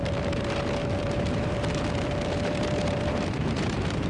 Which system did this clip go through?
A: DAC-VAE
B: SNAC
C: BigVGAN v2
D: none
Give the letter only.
C